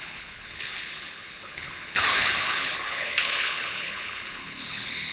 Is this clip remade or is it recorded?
remade